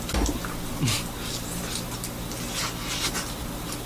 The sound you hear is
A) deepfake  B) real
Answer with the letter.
B